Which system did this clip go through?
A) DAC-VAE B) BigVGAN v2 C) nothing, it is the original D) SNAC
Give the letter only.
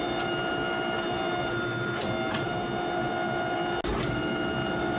C